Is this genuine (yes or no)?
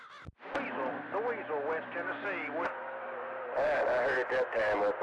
yes